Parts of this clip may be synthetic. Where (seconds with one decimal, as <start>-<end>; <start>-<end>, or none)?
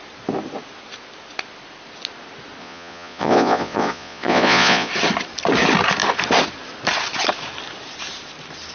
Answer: 2.6-4.9